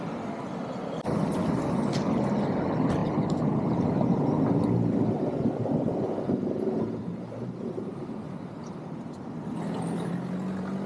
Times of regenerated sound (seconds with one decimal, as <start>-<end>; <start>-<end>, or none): 7.0-10.1